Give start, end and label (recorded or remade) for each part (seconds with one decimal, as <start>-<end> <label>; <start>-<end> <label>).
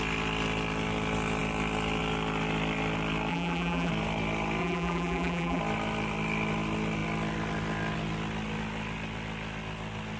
0.0-3.3 recorded; 3.3-3.9 remade; 3.9-4.6 recorded; 4.6-5.6 remade; 5.6-10.2 recorded